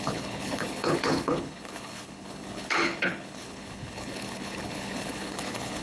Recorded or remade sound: remade